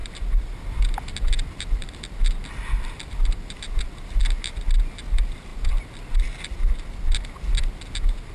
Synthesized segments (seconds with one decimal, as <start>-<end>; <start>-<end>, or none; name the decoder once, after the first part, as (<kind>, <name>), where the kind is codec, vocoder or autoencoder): none

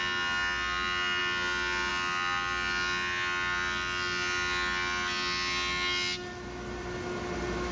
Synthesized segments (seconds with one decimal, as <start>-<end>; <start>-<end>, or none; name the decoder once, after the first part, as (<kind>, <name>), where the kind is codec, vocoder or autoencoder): none